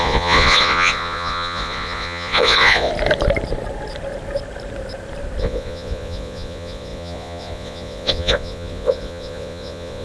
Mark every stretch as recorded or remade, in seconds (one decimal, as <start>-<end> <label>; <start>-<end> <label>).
0.0-2.9 remade; 2.9-5.4 recorded; 5.4-10.0 remade